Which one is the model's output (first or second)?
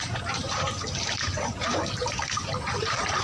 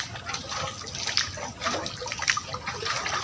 first